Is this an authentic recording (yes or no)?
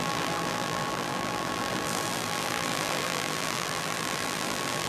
no